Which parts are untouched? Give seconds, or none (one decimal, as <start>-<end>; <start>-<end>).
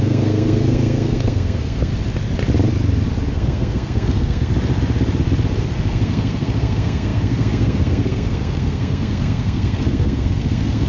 1.9-3.3; 4.5-5.6